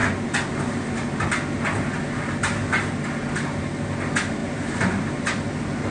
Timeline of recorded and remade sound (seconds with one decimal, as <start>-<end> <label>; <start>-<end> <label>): 0.0-4.4 recorded; 4.4-5.1 remade; 5.1-5.9 recorded